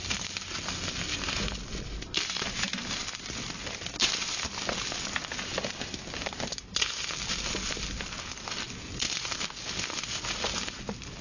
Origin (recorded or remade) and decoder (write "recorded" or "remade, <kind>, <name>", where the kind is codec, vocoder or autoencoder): recorded